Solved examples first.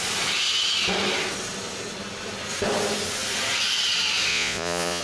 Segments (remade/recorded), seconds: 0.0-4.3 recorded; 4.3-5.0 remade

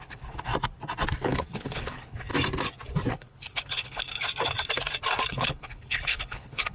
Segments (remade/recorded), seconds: 0.0-0.5 remade; 0.5-1.2 recorded; 1.2-2.3 remade; 2.3-3.1 recorded; 3.1-4.2 remade; 4.2-5.3 recorded; 5.3-6.7 remade

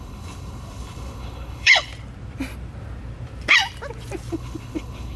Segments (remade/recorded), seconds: 0.0-1.9 remade; 1.9-4.3 recorded; 4.3-5.2 remade